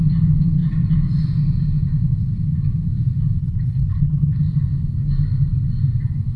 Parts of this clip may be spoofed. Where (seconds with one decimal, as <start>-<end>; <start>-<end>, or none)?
3.4-4.4